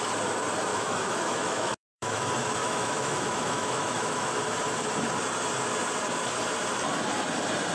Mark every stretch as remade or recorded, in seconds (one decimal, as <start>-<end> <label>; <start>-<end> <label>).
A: 0.0-0.7 recorded; 0.7-2.2 remade; 2.2-2.6 recorded; 2.6-4.3 remade; 4.3-7.7 recorded